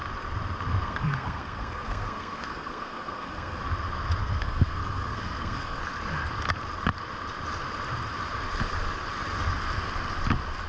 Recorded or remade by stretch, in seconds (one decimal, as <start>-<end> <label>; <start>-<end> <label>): 0.0-0.8 recorded; 0.8-3.6 remade; 3.6-4.2 recorded; 4.2-5.8 remade; 5.8-10.7 recorded